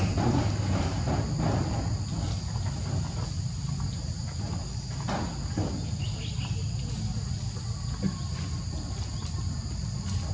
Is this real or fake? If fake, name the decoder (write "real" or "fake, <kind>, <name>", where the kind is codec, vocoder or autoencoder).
real